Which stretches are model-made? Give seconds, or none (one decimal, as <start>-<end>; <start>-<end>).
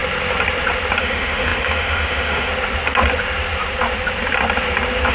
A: 1.0-2.5